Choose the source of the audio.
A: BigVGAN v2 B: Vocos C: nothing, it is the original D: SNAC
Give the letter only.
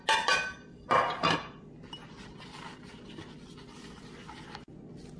C